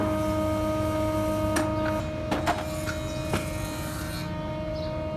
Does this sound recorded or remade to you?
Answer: recorded